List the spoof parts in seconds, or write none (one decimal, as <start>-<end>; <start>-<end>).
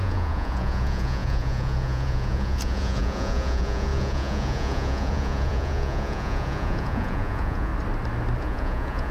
0.0-7.7; 8.4-9.1